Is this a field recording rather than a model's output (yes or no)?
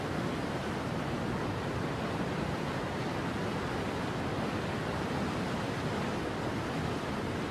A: yes